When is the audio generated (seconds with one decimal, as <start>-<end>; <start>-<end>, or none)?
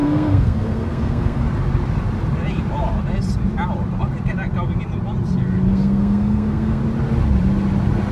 0.0-1.4; 5.7-6.8